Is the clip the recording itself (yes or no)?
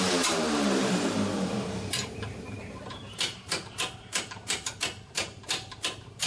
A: no